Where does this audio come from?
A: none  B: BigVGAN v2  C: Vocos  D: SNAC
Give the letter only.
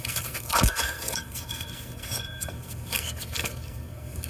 D